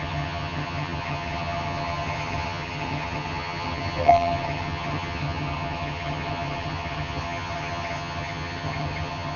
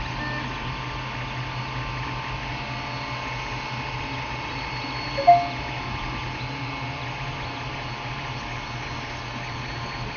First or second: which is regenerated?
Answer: first